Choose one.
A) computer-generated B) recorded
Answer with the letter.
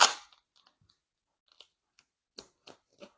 B